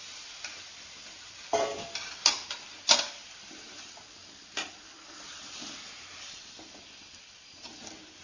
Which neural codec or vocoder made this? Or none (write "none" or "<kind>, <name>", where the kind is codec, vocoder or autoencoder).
vocoder, BigVGAN v2